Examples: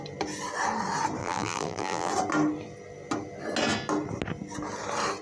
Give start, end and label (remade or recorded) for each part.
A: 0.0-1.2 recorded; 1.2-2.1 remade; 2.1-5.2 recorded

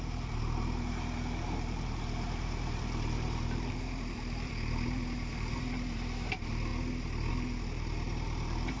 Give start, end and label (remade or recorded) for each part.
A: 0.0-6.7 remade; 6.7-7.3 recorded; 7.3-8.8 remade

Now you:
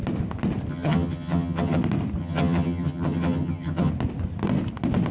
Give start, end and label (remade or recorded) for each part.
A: 0.0-0.7 recorded; 0.7-1.8 remade; 1.8-2.2 recorded; 2.2-3.9 remade; 3.9-5.1 recorded